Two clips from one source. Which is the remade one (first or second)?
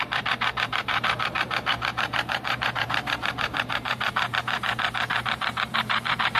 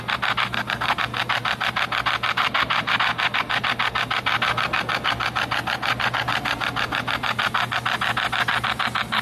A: first